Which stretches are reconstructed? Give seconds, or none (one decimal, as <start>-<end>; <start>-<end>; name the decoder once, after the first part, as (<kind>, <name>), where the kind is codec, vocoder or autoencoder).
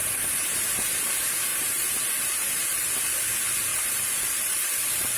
0.0-0.9 (vocoder, BigVGAN v2); 1.5-3.0; 3.7-5.2